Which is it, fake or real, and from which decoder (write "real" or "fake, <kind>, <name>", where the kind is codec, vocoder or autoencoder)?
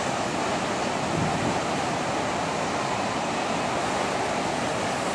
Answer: real